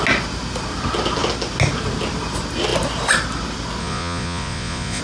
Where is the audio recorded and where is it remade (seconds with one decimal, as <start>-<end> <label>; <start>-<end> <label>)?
0.0-3.8 recorded; 3.8-5.0 remade